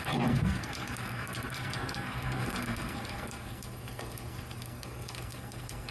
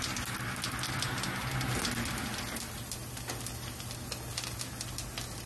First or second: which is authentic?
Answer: second